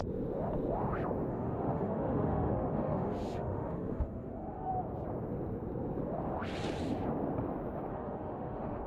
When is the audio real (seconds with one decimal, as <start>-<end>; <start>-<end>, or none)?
0.0-1.3; 4.7-7.9